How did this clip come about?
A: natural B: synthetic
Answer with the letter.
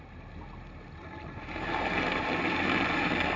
A